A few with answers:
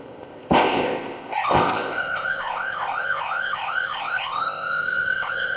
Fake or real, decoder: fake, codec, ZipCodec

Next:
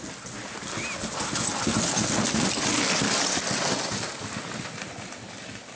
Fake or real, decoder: real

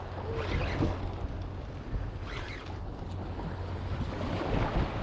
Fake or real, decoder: real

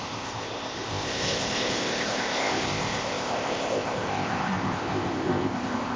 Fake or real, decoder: fake, codec, ZipCodec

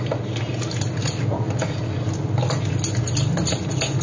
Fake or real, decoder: real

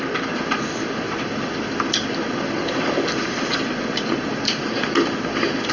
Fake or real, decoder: real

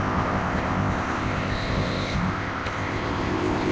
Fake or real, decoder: fake, codec, ZipCodec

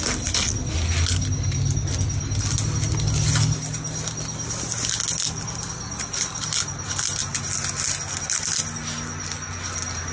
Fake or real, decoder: real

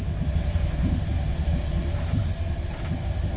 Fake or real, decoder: real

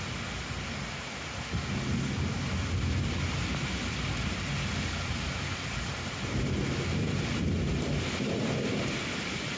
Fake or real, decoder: real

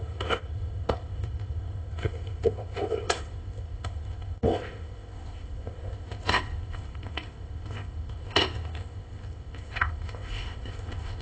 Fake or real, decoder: fake, codec, ZipCodec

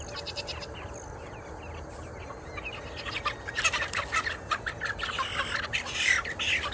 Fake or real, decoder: real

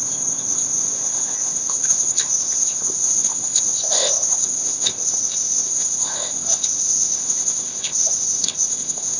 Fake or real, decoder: fake, codec, ZipCodec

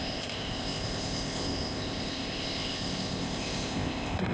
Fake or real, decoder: fake, codec, ZipCodec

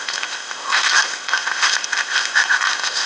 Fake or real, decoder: fake, codec, ZipCodec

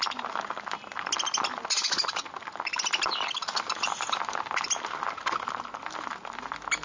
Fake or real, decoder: real